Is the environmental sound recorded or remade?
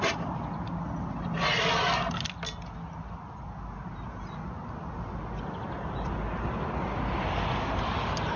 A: recorded